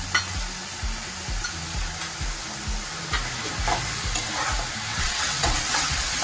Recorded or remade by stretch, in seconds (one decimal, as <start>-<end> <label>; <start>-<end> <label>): 0.0-4.9 recorded; 4.9-6.2 remade